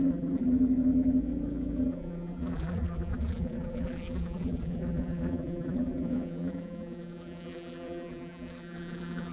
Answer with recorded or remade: remade